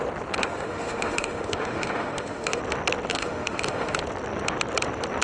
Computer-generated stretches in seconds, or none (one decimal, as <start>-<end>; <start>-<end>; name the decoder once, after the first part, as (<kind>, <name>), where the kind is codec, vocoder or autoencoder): 0.4-2.6 (autoencoder, DAC-VAE); 3.1-4.0